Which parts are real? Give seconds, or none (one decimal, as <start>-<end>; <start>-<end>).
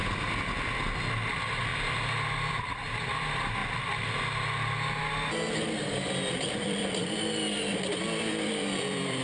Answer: 1.7-2.5; 3.6-6.3